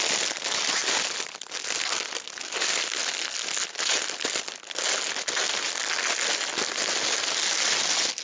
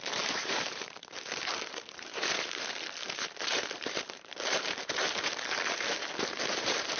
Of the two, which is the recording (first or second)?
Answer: first